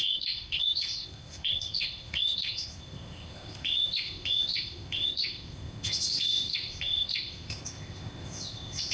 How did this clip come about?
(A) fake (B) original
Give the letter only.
A